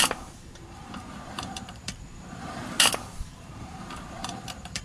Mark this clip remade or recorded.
remade